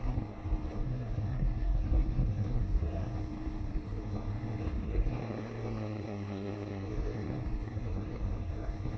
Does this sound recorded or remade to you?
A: remade